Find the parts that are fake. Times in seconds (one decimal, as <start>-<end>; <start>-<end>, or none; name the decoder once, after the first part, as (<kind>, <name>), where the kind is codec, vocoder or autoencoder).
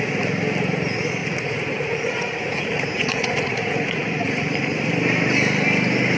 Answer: 1.2-4.9 (vocoder, Vocos)